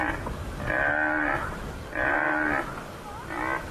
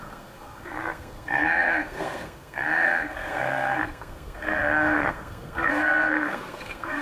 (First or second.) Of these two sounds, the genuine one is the first